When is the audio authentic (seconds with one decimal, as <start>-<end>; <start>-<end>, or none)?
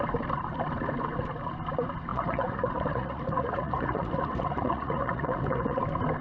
0.0-2.1; 5.8-6.2